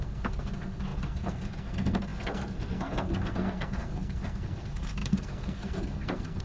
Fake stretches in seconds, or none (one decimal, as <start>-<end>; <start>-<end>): 0.0-6.4